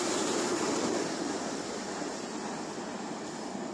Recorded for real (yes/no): yes